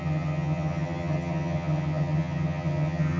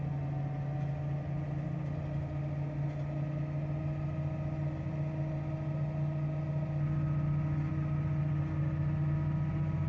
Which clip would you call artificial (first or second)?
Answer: first